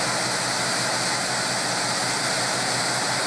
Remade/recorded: recorded